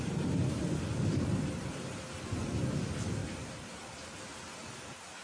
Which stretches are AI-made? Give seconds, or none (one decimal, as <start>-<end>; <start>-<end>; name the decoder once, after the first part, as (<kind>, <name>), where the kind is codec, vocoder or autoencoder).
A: 0.0-0.6 (vocoder, BigVGAN v2); 3.2-4.2